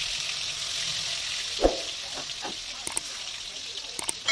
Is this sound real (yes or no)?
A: yes